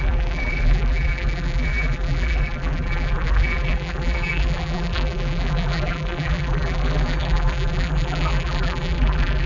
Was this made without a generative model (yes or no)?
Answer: no